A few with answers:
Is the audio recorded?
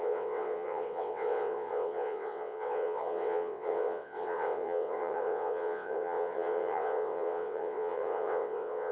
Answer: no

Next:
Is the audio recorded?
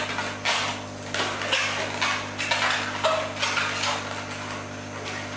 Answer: yes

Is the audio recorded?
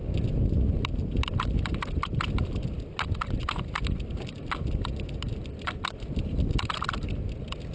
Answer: yes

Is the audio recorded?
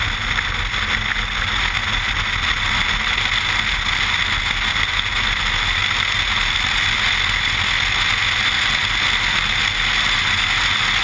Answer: yes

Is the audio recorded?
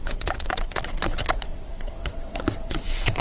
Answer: no